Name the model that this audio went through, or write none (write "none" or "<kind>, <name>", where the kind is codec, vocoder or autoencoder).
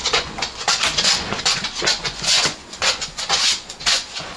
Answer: vocoder, Vocos